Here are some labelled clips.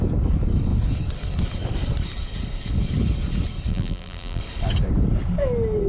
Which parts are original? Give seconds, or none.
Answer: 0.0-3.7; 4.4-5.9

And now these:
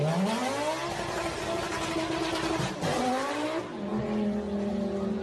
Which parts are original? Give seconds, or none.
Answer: 0.0-5.2